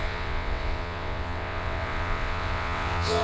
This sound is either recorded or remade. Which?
remade